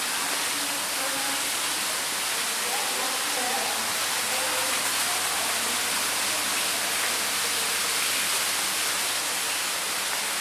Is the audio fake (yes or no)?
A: no